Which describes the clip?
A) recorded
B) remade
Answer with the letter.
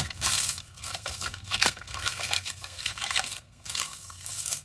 B